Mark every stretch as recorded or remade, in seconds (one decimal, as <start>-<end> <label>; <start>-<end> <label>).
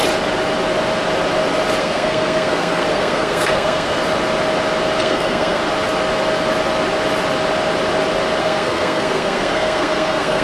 0.0-1.8 recorded; 1.8-4.0 remade; 4.0-5.0 recorded; 5.0-5.6 remade; 5.6-8.4 recorded; 8.4-10.4 remade